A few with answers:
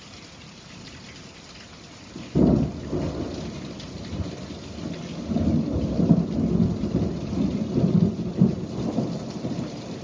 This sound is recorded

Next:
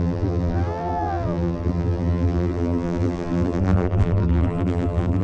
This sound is remade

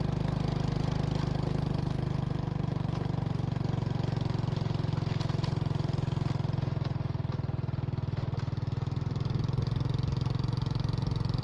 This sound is recorded